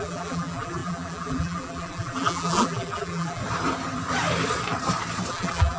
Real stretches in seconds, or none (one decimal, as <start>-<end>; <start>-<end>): 3.4-5.3